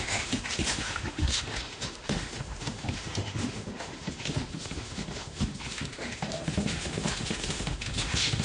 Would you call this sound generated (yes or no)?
yes